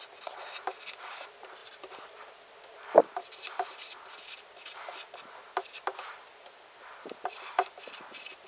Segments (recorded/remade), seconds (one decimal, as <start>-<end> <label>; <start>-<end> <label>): 0.0-8.5 recorded